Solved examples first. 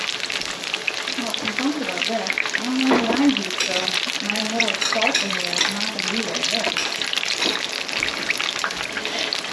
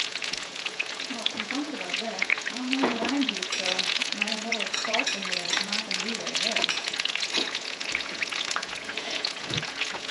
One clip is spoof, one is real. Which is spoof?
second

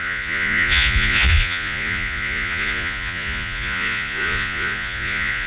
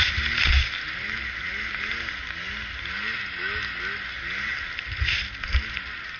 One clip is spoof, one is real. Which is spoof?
first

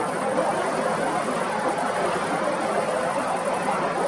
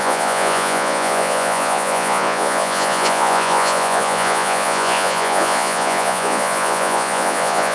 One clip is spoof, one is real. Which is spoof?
second